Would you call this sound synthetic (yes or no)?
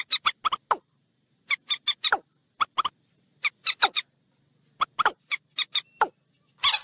no